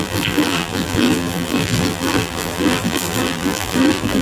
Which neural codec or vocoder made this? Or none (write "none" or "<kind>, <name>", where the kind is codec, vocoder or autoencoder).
vocoder, BigVGAN v2